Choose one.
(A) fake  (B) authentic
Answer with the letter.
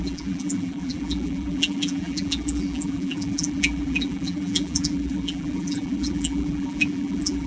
A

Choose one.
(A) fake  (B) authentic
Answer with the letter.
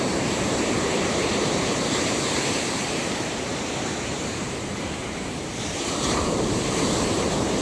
A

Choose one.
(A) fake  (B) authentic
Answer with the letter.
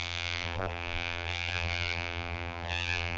A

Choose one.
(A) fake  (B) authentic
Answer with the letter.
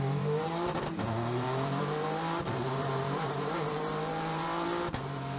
A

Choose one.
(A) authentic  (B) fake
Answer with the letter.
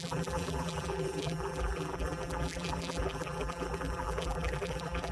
B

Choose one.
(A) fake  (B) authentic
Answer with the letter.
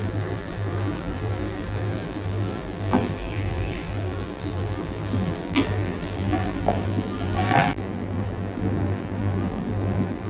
A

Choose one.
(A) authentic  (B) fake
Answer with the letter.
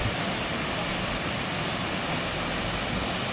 A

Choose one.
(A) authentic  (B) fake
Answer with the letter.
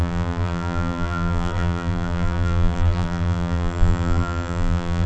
B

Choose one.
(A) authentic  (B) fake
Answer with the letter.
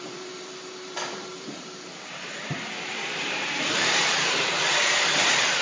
B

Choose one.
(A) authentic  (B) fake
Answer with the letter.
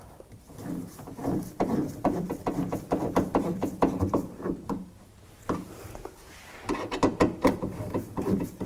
B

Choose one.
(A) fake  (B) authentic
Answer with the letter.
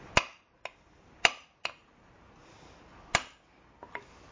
B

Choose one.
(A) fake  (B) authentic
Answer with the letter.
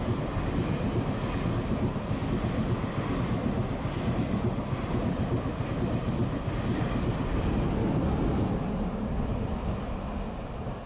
B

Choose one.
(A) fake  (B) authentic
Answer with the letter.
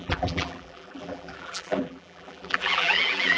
A